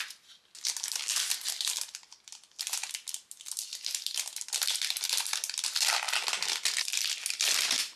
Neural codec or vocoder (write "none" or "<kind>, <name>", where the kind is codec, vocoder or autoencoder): none